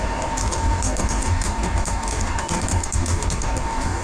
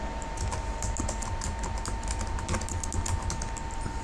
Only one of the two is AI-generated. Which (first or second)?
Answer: first